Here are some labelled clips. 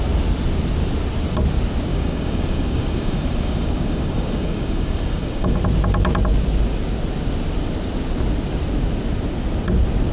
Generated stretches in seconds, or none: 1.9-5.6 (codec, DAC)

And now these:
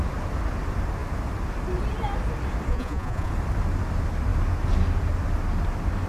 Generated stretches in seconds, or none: 2.7-3.3 (vocoder, Vocos)

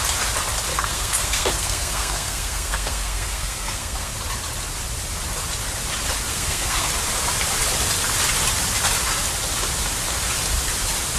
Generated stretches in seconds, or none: 0.7-4.1 (codec, SNAC); 6.3-6.9

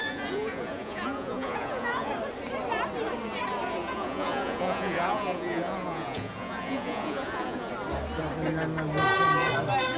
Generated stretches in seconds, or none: 0.0-2.1 (vocoder, Vocos); 3.8-7.7

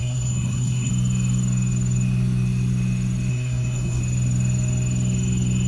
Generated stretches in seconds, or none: 0.0-0.9 (codec, SNAC); 3.3-4.0

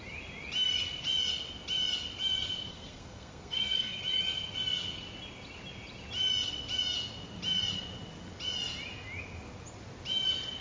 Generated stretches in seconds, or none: 2.7-4.0 (codec, SNAC)

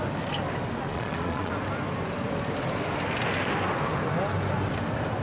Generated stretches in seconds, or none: 0.9-1.5 (vocoder, Vocos)

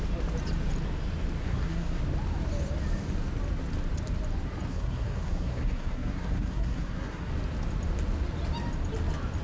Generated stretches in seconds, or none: 1.4-2.0 (codec, SNAC); 4.7-7.3